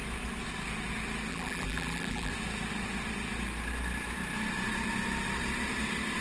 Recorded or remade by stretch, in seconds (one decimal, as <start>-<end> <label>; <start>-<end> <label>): 0.0-1.3 recorded; 1.3-2.3 remade; 2.3-6.2 recorded